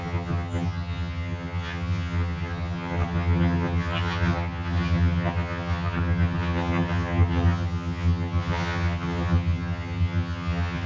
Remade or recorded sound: remade